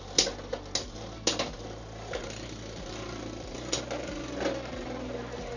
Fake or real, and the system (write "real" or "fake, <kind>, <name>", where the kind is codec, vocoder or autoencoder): real